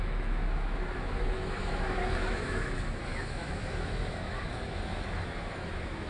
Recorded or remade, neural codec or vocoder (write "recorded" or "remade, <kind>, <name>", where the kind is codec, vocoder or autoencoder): remade, autoencoder, DAC-VAE